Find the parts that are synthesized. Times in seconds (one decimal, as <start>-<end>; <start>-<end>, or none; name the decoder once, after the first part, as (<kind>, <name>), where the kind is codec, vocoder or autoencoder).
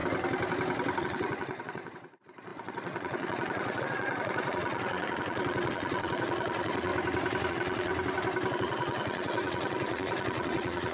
1.0-6.9 (vocoder, Vocos); 7.5-7.9; 8.5-10.9